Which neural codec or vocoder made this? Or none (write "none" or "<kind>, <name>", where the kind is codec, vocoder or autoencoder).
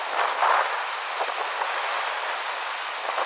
none